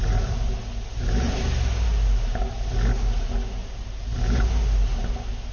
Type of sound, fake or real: real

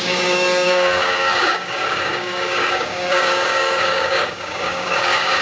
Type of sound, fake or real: fake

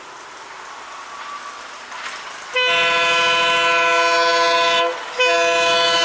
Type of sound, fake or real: real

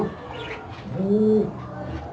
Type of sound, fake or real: real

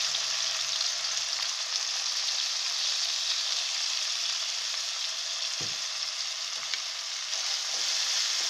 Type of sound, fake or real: real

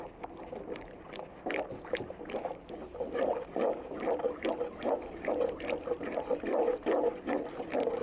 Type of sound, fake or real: real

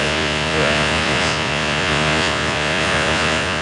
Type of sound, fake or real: fake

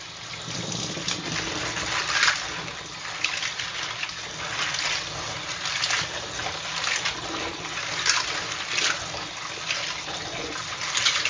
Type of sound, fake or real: real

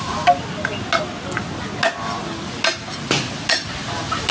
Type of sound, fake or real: real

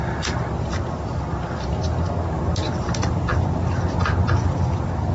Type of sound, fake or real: real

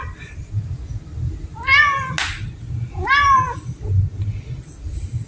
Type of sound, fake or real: real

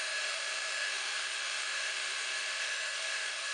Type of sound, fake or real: fake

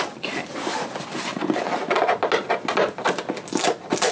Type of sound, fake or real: real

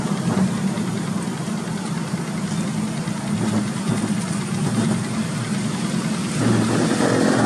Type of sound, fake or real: real